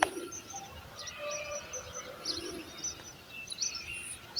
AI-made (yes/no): no